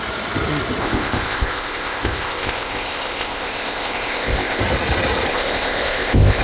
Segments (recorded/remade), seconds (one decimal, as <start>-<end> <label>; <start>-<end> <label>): 0.0-0.8 recorded; 0.8-4.6 remade; 4.6-5.3 recorded; 5.3-6.4 remade